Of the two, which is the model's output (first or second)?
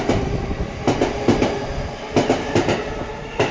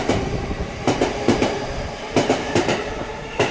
second